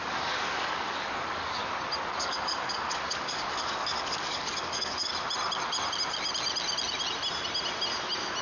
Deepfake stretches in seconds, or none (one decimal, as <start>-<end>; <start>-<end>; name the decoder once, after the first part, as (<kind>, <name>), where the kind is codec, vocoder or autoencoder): 0.0-1.6 (codec, DAC); 2.2-5.1